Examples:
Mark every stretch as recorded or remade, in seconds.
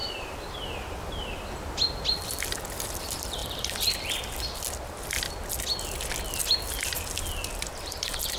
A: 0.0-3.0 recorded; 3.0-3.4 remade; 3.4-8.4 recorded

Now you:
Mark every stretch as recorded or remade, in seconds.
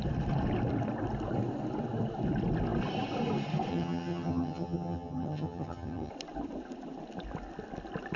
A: 0.0-3.7 recorded; 3.7-6.1 remade; 6.1-8.2 recorded